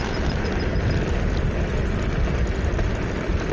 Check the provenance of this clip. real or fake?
real